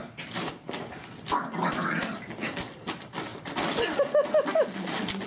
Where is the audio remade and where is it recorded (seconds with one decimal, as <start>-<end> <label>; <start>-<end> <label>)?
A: 0.0-5.3 recorded